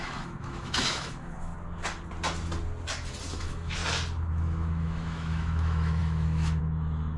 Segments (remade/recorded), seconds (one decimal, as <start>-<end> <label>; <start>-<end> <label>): 0.0-1.5 remade; 1.5-3.2 recorded; 3.2-3.8 remade; 3.8-4.3 recorded; 4.3-7.2 remade